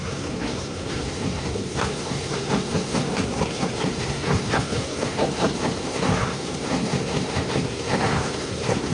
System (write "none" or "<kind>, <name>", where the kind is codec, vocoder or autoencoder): codec, SNAC